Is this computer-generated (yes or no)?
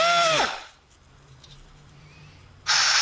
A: yes